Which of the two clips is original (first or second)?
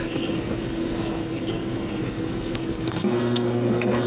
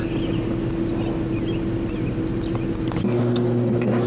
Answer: second